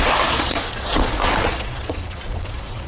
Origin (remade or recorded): remade